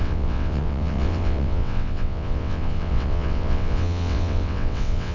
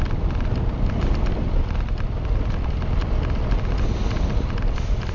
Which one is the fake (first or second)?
first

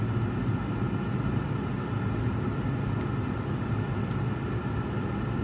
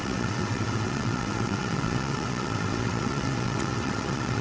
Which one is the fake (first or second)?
second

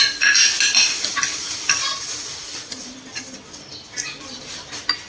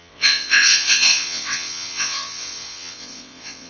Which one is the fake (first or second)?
second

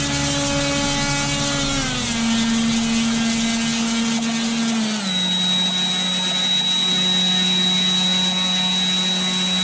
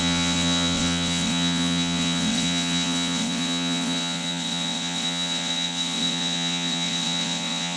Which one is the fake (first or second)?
second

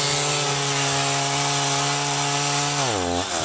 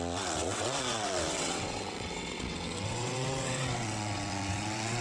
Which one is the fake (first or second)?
second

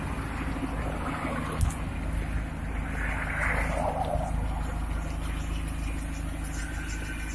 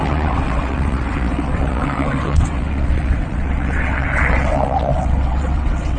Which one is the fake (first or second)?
second